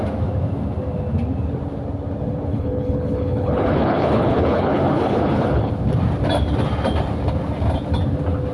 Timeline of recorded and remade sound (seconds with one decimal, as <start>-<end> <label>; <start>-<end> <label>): 0.0-2.5 recorded; 2.5-5.7 remade; 5.7-8.5 recorded